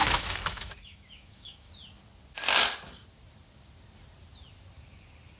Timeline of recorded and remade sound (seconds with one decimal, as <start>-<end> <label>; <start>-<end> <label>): 0.0-1.7 remade; 1.7-5.4 recorded